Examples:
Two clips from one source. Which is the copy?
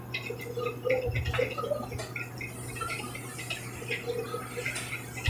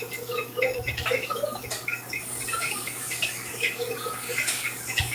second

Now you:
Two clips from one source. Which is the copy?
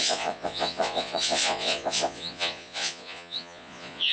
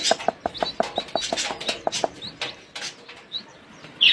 first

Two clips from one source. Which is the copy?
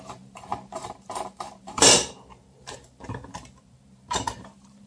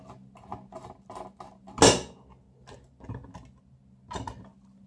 first